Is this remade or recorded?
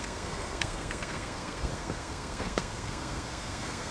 remade